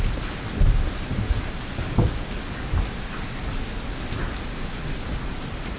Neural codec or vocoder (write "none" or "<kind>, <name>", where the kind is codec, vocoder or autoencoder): none